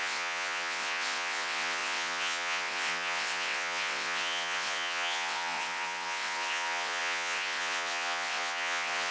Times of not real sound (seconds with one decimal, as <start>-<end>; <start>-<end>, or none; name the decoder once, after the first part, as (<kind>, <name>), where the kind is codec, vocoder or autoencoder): 0.0-9.1 (vocoder, WaveNeXt)